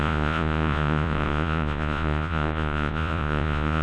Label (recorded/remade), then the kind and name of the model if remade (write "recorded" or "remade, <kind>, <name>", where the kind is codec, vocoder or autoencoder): remade, vocoder, Vocos